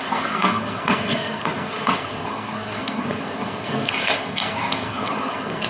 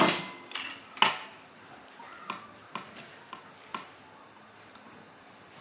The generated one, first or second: first